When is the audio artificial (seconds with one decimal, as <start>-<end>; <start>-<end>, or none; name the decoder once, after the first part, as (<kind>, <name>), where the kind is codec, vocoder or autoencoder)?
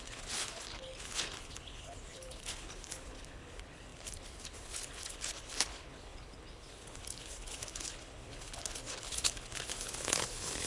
0.0-10.7 (codec, HILCodec)